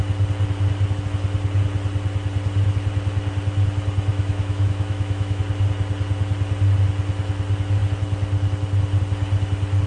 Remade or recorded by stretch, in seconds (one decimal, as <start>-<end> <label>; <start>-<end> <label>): 0.0-4.1 recorded; 4.1-5.4 remade; 5.4-9.9 recorded